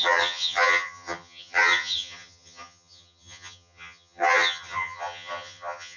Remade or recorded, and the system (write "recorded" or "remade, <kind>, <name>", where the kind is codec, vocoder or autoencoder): remade, vocoder, HiFi-GAN